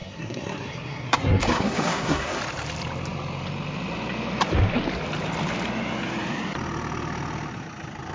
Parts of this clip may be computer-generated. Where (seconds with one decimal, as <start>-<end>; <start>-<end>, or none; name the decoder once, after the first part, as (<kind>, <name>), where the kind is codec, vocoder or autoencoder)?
0.0-2.4 (codec, SNAC)